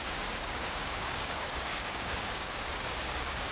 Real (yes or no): no